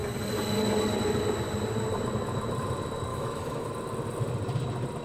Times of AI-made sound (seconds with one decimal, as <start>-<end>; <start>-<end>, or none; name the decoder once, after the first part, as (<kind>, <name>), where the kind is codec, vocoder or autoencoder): 3.1-3.7 (autoencoder, DAC-VAE)